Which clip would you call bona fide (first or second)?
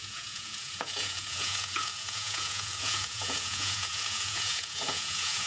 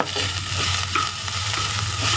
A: second